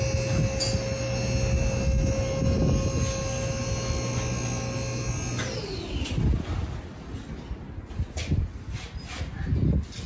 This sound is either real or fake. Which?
real